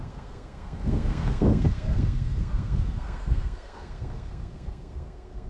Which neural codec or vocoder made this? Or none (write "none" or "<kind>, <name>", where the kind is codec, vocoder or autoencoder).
codec, SNAC